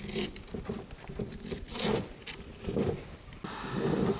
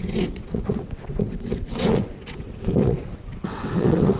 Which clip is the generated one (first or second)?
second